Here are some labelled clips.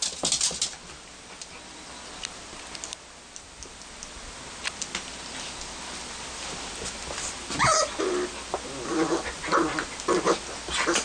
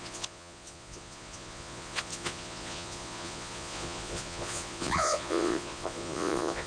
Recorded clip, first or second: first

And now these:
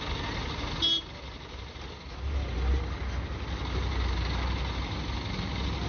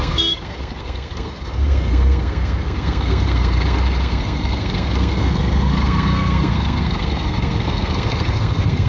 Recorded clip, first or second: first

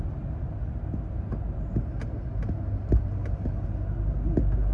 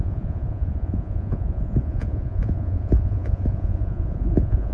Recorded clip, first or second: first